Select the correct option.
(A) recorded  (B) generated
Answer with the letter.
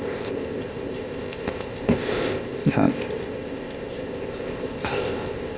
B